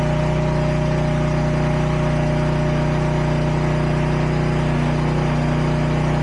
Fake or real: real